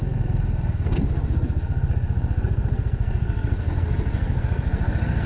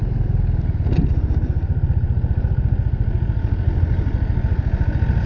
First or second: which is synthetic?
first